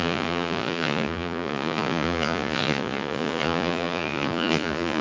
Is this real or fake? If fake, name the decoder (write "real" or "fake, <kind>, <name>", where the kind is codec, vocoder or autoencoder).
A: fake, vocoder, Vocos